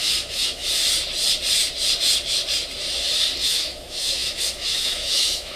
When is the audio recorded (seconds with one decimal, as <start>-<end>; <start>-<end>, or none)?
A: 0.6-3.4